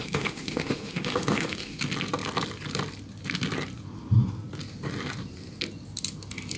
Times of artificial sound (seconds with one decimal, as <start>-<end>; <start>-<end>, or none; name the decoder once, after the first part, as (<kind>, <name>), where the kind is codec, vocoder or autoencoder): 0.0-1.8 (autoencoder, DAC-VAE)